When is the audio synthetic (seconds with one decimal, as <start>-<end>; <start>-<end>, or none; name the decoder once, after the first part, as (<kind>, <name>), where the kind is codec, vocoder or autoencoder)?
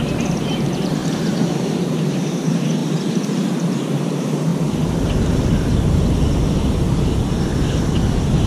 0.0-2.8 (vocoder, BigVGAN v2); 3.7-4.5